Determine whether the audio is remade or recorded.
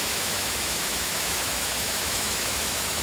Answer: remade